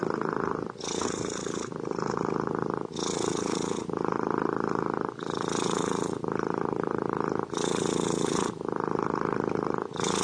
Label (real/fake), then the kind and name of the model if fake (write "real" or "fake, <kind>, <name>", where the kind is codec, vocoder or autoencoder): real